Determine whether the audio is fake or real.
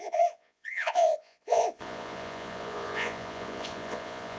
fake